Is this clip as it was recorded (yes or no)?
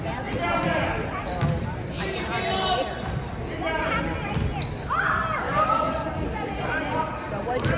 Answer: yes